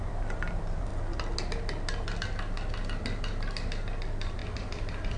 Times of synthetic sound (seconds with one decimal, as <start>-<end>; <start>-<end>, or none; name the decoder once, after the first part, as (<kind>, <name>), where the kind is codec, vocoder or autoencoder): 0.0-0.9 (vocoder, BigVGAN v2); 4.0-4.4